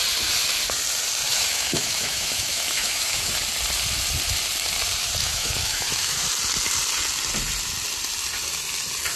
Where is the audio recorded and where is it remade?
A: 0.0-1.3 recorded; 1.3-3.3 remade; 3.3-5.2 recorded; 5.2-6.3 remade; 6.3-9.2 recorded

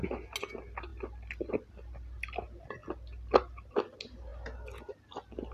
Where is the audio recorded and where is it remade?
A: 0.0-5.5 recorded

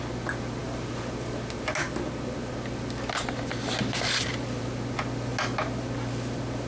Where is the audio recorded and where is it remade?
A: 0.0-6.7 recorded

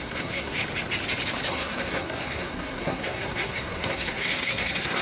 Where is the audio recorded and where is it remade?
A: 0.0-0.6 remade; 0.6-1.5 recorded; 1.5-5.0 remade